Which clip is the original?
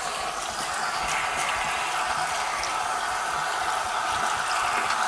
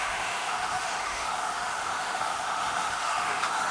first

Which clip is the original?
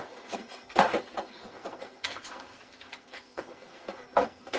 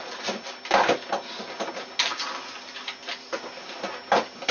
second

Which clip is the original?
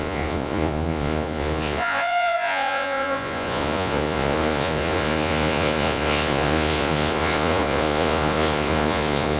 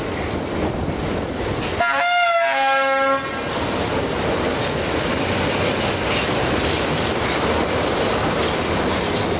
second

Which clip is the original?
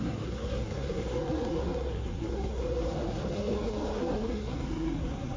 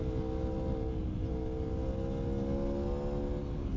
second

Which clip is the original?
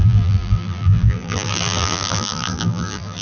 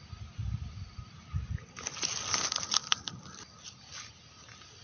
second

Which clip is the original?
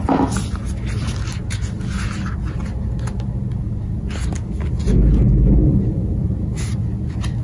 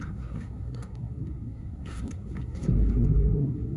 first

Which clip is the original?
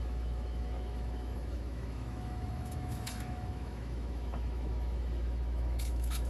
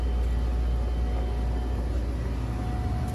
second